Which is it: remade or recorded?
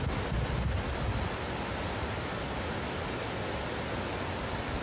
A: recorded